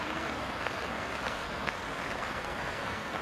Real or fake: fake